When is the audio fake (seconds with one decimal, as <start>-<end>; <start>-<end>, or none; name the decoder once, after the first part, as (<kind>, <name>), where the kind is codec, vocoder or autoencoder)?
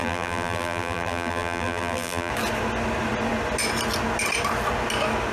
0.0-2.3 (vocoder, BigVGAN v2)